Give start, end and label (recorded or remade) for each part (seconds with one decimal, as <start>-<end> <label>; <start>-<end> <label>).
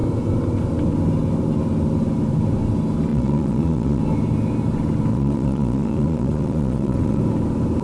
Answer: 0.0-3.1 recorded; 3.1-4.0 remade; 4.0-5.1 recorded; 5.1-7.2 remade; 7.2-7.8 recorded